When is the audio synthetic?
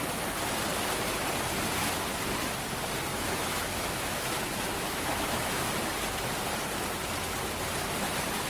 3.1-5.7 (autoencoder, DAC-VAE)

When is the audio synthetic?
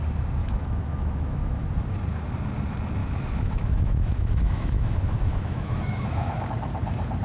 0.4-1.6 (autoencoder, DAC-VAE); 3.0-6.5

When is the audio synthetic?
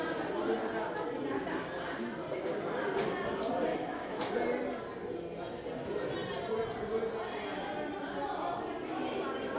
3.7-4.3 (autoencoder, DAC-VAE)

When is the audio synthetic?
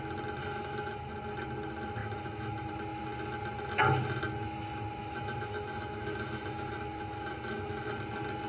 0.4-1.1 (autoencoder, DAC-VAE); 2.0-2.7; 5.0-7.9